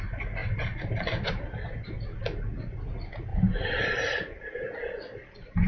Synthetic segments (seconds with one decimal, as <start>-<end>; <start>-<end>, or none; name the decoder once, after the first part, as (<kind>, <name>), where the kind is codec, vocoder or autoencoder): 0.4-1.5 (vocoder, BigVGAN v2); 3.3-4.4